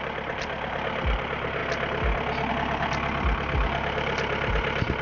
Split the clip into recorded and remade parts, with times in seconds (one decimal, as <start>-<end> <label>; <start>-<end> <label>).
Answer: 0.0-1.6 remade; 1.6-2.5 recorded; 2.5-5.0 remade